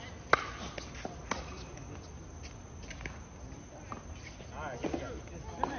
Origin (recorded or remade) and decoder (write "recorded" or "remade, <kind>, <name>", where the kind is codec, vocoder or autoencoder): recorded